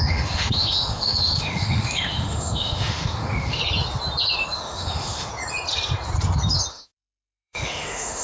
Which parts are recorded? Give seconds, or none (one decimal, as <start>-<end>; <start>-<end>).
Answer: 3.6-4.4; 5.3-6.7